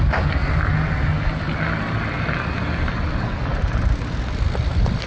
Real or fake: real